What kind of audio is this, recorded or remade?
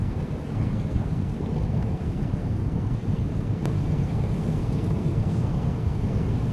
remade